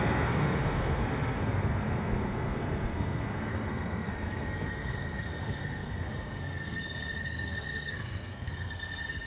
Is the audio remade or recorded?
remade